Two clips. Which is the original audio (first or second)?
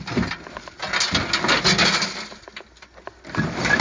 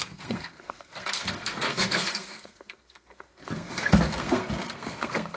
first